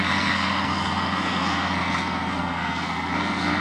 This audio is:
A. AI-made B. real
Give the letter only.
A